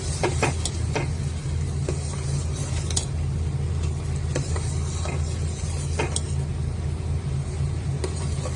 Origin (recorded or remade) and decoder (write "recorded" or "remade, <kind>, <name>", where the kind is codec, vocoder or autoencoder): recorded